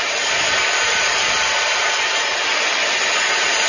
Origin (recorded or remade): recorded